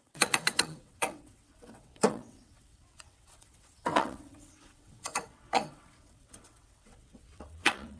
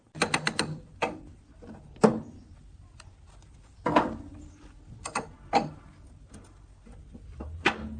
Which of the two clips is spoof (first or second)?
first